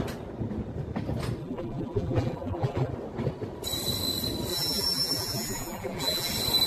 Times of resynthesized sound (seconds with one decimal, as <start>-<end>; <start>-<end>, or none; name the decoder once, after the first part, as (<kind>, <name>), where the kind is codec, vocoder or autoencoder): 1.4-2.9 (vocoder, BigVGAN v2); 4.5-6.3